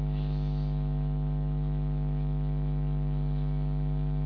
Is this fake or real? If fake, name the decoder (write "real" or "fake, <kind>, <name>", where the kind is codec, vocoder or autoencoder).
fake, autoencoder, DAC-VAE